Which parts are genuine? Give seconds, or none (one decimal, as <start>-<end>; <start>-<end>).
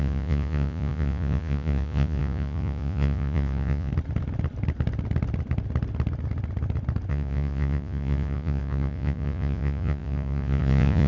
3.9-7.1